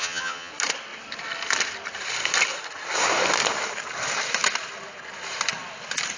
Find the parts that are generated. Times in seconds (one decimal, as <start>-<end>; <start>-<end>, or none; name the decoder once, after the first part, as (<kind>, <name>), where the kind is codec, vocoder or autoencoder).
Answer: 0.0-0.5 (vocoder, HiFi-GAN)